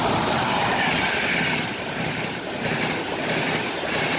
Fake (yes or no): yes